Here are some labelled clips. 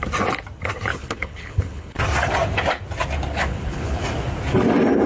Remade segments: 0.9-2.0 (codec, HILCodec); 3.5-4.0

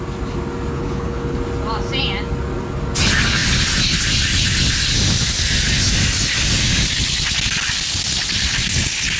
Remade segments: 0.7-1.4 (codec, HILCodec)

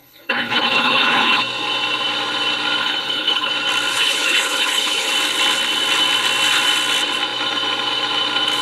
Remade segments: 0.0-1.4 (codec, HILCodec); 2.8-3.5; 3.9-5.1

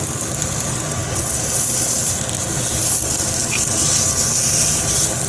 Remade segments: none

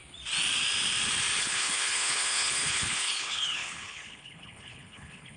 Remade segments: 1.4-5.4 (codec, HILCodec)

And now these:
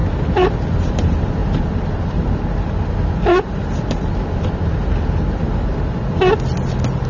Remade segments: none

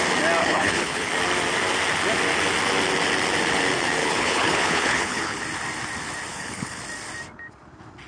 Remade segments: 0.4-1.1 (codec, HILCodec); 4.0-5.4; 6.3-6.8